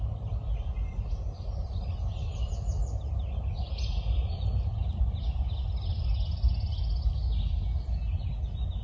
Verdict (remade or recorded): recorded